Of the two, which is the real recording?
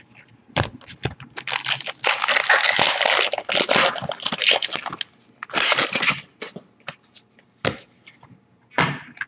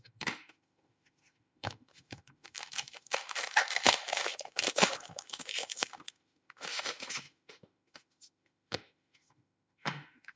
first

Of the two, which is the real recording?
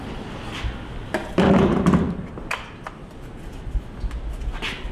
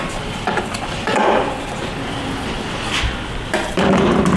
first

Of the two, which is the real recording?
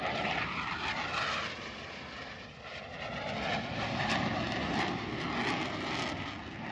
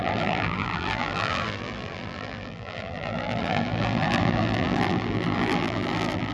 first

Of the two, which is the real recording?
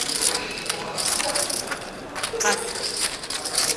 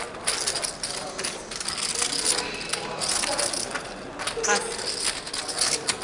second